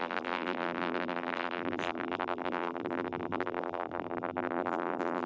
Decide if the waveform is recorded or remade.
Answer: remade